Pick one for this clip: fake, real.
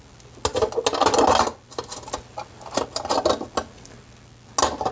real